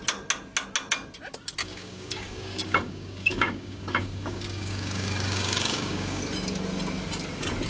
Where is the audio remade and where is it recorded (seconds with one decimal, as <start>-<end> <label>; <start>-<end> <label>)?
0.0-1.6 recorded; 1.6-6.2 remade; 6.2-7.7 recorded